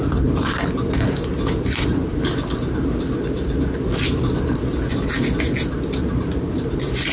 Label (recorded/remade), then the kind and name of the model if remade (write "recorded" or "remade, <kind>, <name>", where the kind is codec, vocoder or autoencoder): recorded